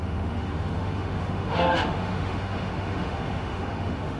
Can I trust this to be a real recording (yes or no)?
no